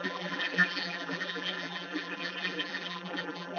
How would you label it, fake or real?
fake